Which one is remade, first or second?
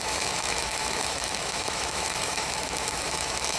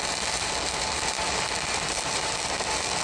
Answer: first